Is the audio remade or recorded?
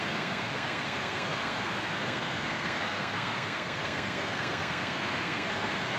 remade